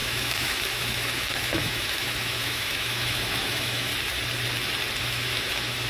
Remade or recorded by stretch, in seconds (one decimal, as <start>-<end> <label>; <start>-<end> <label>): 0.0-3.9 remade; 3.9-5.0 recorded; 5.0-5.9 remade